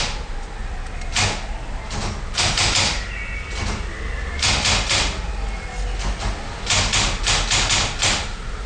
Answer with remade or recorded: recorded